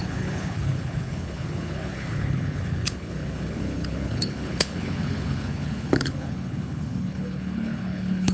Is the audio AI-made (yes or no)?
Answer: yes